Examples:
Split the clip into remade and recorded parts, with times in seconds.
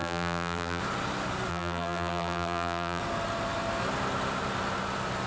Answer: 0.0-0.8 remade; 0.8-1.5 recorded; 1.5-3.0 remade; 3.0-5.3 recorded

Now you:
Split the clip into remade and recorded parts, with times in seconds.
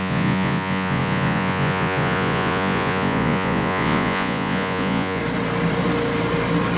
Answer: 0.0-5.2 remade; 5.2-6.8 recorded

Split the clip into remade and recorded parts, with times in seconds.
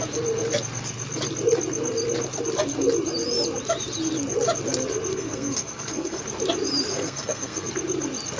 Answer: 0.0-5.1 recorded; 5.1-6.2 remade; 6.2-6.9 recorded; 6.9-7.7 remade; 7.7-8.4 recorded